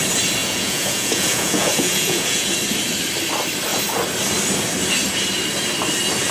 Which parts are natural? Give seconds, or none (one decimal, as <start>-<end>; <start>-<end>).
0.0-0.4; 2.5-6.3